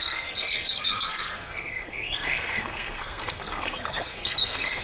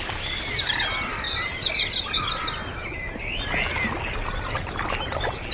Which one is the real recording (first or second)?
second